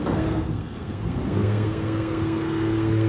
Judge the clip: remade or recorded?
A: remade